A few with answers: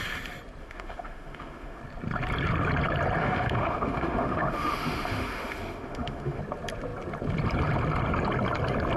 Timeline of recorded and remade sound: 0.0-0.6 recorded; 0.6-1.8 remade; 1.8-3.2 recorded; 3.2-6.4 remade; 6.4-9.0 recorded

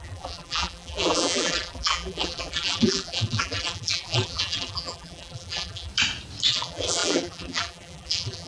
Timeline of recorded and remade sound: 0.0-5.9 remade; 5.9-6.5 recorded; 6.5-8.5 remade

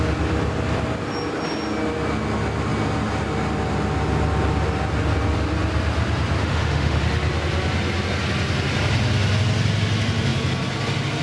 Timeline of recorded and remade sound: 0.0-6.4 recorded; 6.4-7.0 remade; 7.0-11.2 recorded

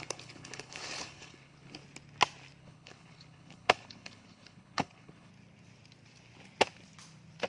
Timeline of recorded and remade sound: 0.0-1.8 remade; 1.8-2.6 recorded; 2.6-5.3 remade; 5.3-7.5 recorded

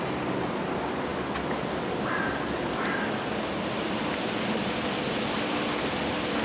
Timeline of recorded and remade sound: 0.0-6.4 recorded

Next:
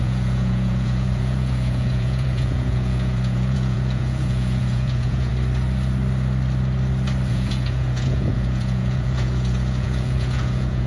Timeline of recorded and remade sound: 0.0-5.3 remade; 5.3-7.3 recorded; 7.3-10.9 remade